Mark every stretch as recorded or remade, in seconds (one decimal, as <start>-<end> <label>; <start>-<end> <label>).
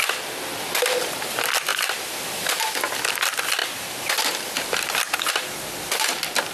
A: 0.0-1.7 recorded; 1.7-3.1 remade; 3.1-3.6 recorded; 3.6-5.0 remade; 5.0-6.5 recorded